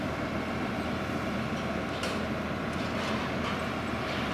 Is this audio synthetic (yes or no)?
yes